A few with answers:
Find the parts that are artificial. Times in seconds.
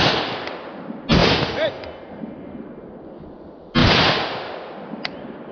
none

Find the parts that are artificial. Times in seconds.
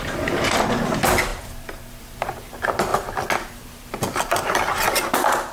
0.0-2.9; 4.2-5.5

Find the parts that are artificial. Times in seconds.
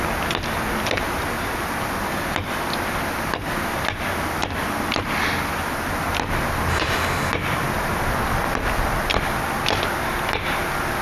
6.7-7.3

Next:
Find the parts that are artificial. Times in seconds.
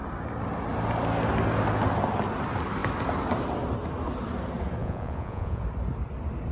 4.8-5.6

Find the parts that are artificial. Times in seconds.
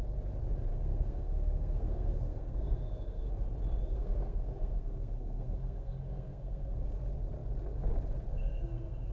0.7-3.3; 3.8-6.8; 8.3-9.1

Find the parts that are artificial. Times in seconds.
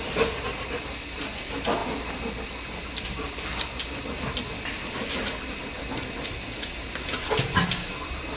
none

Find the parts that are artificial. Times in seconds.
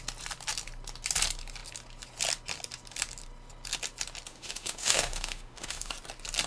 4.3-5.9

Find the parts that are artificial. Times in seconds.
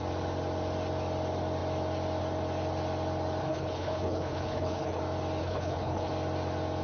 3.4-5.0; 5.4-6.1